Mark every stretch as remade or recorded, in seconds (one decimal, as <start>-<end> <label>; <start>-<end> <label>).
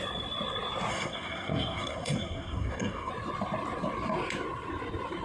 0.0-0.9 recorded; 0.9-3.1 remade; 3.1-5.2 recorded